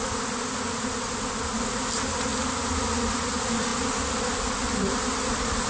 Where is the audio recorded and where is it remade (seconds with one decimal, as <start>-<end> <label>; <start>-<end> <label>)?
0.0-5.7 recorded